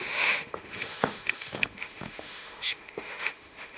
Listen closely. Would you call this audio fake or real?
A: fake